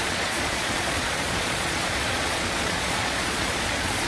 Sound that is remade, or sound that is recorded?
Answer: remade